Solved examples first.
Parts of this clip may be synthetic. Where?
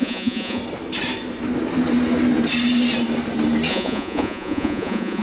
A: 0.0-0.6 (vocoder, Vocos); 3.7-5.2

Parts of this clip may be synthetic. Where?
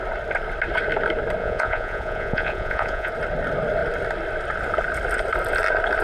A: 1.4-3.1 (vocoder, Vocos)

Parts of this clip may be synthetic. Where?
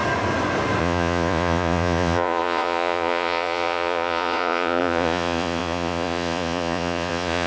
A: 0.8-7.5 (vocoder, Vocos)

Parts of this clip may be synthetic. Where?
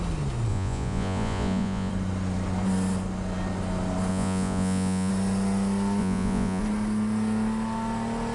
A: 0.5-1.9 (vocoder, Vocos); 4.1-5.1; 6.0-6.6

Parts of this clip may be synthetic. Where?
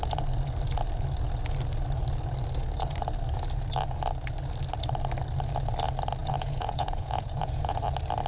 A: 6.2-7.8 (vocoder, Vocos)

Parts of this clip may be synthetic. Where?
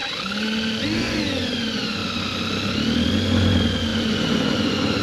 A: 1.0-2.0 (vocoder, Vocos); 3.1-5.0